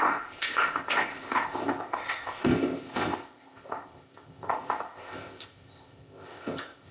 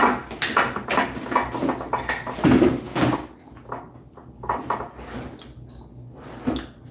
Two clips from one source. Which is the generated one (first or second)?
first